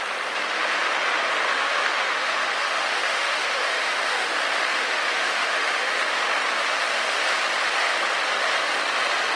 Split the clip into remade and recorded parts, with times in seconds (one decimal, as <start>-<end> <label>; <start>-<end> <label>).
0.0-1.5 recorded; 1.5-4.3 remade; 4.3-4.7 recorded; 4.7-6.2 remade; 6.2-9.4 recorded